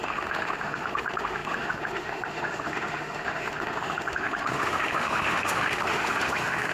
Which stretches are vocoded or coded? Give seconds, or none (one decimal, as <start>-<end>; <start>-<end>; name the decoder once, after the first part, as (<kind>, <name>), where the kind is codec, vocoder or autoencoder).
0.0-6.7 (autoencoder, DAC-VAE)